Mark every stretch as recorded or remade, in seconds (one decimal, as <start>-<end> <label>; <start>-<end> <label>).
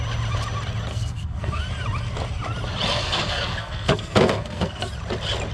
0.0-0.9 recorded; 0.9-1.6 remade; 1.6-2.9 recorded; 2.9-4.9 remade; 4.9-5.5 recorded